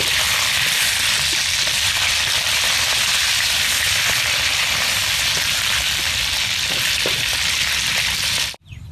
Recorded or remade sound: recorded